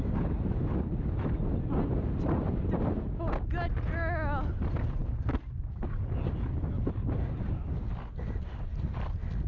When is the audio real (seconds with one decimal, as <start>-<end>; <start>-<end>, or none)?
0.0-9.5